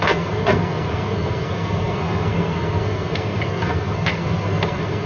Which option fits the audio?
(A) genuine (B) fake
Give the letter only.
B